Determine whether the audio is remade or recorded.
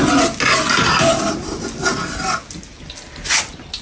recorded